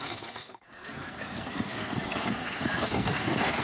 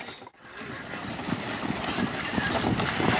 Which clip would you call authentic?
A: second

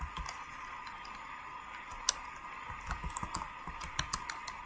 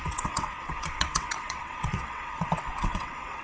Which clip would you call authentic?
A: first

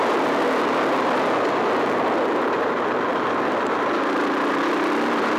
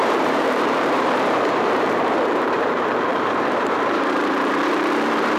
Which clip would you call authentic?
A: first